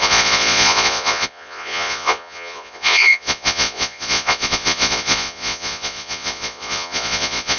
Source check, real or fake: fake